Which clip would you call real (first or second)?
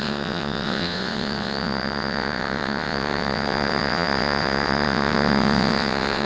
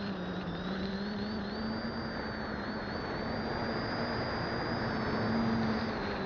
second